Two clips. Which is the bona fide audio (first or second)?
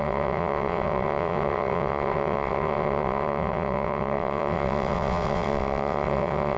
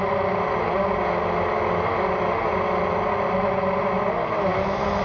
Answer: second